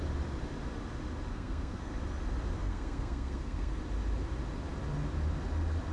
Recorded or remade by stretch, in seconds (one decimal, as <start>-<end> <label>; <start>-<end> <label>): 0.0-1.3 recorded; 1.3-1.9 remade; 1.9-2.6 recorded; 2.6-3.8 remade; 3.8-5.9 recorded